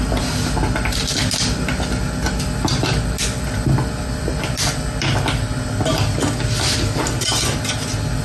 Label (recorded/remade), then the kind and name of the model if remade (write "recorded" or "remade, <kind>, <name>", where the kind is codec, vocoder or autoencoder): recorded